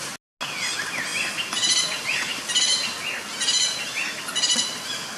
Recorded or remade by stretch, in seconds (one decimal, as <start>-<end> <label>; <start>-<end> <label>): 0.0-5.2 recorded